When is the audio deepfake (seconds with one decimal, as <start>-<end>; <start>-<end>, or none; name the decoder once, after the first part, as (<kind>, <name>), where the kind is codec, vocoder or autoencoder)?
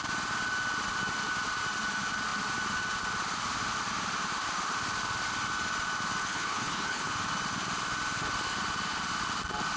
6.2-7.1 (codec, HILCodec)